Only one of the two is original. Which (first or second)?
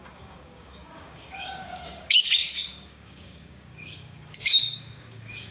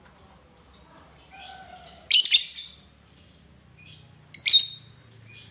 second